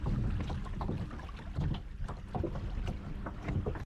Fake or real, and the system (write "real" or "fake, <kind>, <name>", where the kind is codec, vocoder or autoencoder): real